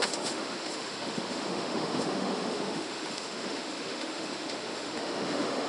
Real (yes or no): no